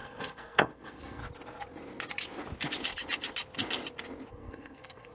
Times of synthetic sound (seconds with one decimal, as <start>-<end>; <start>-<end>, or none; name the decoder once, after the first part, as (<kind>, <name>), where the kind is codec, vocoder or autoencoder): 0.0-1.2 (codec, SNAC); 4.3-5.1